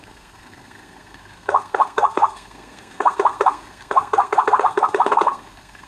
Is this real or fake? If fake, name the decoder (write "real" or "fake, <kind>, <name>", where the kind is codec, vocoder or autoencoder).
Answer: fake, codec, SNAC